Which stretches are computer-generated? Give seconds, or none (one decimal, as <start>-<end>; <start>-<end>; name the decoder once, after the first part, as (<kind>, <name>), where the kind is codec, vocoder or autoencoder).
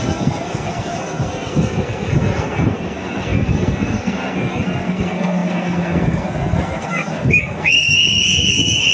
0.0-8.9 (codec, SNAC)